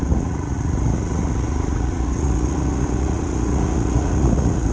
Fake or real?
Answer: fake